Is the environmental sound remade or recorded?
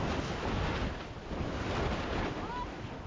recorded